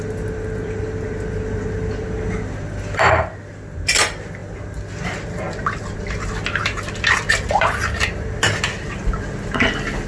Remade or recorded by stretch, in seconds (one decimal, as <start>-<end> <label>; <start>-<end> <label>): 0.0-10.1 recorded